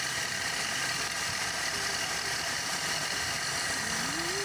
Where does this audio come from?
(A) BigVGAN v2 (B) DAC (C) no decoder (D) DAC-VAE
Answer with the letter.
C